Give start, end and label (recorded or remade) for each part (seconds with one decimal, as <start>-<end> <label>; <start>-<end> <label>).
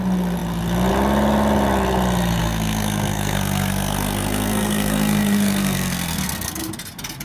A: 0.0-2.4 recorded; 2.4-6.7 remade; 6.7-7.2 recorded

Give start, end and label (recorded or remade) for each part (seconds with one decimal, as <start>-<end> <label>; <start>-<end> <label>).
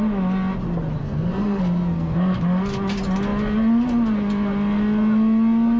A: 0.0-1.0 recorded; 1.0-2.4 remade; 2.4-5.8 recorded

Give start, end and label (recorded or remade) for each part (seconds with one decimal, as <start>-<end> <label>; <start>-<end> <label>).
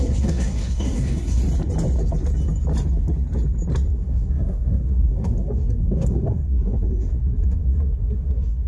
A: 0.0-1.4 remade; 1.4-3.9 recorded; 3.9-8.7 remade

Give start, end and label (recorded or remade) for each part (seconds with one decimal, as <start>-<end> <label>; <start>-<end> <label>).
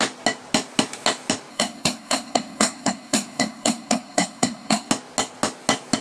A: 0.0-1.5 recorded; 1.5-4.9 remade; 4.9-6.0 recorded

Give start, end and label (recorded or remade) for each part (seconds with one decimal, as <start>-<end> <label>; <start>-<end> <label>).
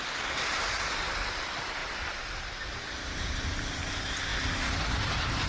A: 0.0-5.5 recorded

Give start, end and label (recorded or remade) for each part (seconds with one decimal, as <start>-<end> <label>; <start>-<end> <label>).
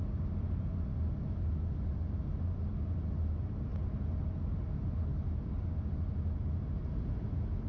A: 0.0-7.7 recorded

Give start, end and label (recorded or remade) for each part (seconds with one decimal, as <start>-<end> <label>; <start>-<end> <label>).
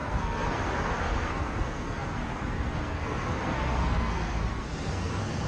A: 0.0-5.5 remade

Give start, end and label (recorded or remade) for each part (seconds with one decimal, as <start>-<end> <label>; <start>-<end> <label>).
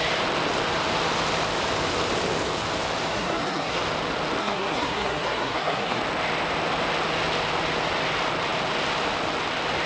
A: 0.0-3.1 recorded; 3.1-3.8 remade; 3.8-4.4 recorded; 4.4-6.0 remade; 6.0-9.9 recorded